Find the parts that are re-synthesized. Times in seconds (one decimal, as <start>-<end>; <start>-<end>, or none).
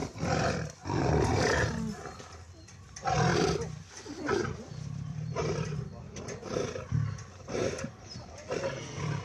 none